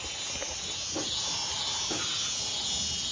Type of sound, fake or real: real